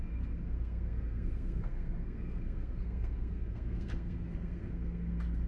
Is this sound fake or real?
fake